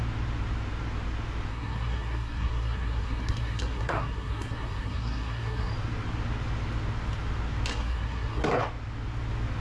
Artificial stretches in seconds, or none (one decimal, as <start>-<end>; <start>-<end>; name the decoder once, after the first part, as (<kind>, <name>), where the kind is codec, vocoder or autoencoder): 1.5-5.7 (codec, SNAC); 7.7-8.6